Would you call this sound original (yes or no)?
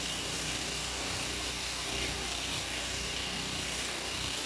no